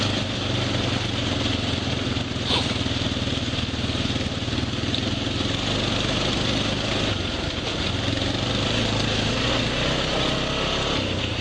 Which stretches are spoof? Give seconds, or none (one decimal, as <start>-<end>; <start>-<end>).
none